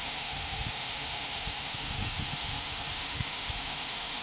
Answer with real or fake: fake